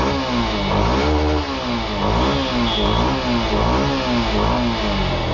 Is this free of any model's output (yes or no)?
yes